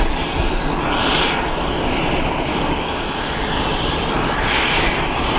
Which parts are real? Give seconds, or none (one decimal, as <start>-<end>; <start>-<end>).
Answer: 0.0-2.5; 3.0-5.4